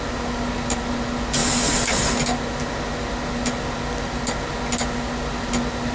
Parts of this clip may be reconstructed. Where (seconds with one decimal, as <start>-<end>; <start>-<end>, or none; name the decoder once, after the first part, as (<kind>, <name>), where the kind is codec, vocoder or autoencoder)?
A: none